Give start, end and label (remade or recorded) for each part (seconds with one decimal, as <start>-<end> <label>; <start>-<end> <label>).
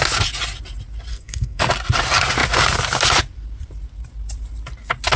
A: 0.0-1.1 recorded; 1.1-1.7 remade; 1.7-5.2 recorded